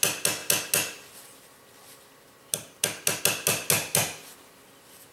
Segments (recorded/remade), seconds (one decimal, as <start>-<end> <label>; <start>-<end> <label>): 0.0-5.1 recorded